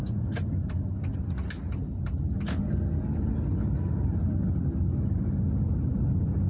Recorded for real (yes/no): yes